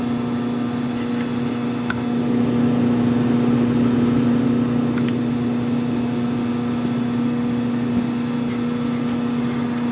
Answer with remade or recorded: recorded